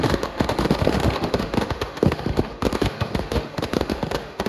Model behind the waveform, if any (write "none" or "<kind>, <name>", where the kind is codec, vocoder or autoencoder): autoencoder, DAC-VAE